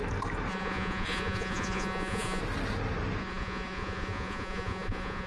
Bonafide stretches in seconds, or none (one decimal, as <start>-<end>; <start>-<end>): 0.0-0.5; 2.4-3.2